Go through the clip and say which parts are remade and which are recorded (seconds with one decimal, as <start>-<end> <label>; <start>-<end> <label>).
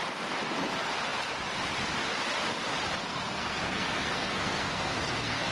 0.0-3.0 recorded; 3.0-5.5 remade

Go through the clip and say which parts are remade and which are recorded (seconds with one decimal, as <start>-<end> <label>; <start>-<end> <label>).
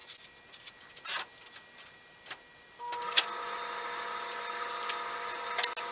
0.0-5.9 recorded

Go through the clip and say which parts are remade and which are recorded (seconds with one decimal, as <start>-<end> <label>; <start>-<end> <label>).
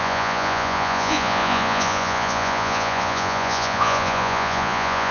0.0-5.1 remade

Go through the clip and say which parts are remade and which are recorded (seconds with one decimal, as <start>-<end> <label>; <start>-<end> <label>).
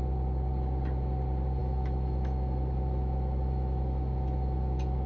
0.0-1.6 recorded; 1.6-5.1 remade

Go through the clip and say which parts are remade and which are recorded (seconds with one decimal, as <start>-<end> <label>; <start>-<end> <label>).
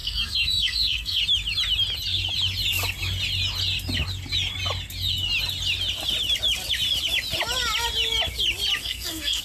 0.0-1.2 remade; 1.2-8.8 recorded; 8.8-9.4 remade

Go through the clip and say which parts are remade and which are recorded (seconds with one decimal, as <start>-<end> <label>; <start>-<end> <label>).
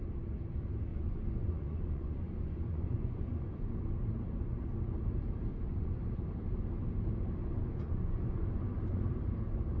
0.0-0.9 recorded; 0.9-3.8 remade; 3.8-5.5 recorded; 5.5-6.0 remade; 6.0-7.4 recorded; 7.4-9.0 remade; 9.0-9.8 recorded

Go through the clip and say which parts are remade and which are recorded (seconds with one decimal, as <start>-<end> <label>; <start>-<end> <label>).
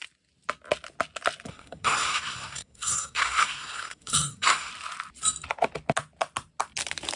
0.0-1.5 recorded; 1.5-4.7 remade; 4.7-7.2 recorded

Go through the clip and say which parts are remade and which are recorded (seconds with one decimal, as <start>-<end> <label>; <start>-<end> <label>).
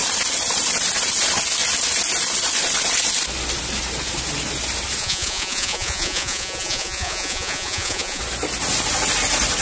0.0-5.0 recorded; 5.0-8.2 remade; 8.2-9.6 recorded